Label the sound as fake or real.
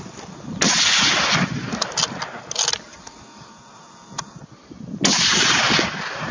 real